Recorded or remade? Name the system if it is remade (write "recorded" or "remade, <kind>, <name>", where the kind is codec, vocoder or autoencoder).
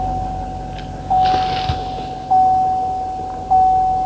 recorded